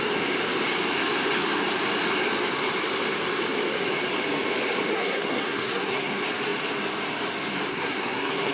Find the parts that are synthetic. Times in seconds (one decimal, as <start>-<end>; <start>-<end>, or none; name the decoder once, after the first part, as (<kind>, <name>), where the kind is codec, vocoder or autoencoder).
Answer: 4.9-6.1 (codec, SNAC); 7.7-8.5